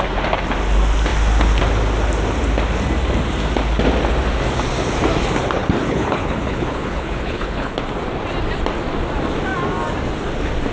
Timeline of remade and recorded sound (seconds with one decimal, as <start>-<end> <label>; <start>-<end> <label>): 0.0-5.6 recorded; 5.6-7.7 remade; 7.7-10.7 recorded